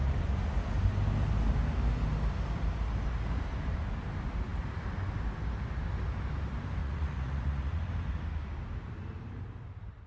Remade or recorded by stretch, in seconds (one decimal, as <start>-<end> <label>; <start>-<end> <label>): 0.0-6.8 recorded; 6.8-7.9 remade; 7.9-10.1 recorded